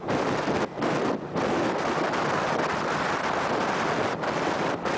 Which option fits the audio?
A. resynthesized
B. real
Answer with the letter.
B